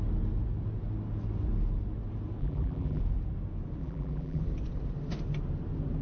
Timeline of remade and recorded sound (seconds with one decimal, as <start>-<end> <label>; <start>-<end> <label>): 0.0-2.4 recorded; 2.4-3.0 remade; 3.0-3.8 recorded; 3.8-4.4 remade; 4.4-6.0 recorded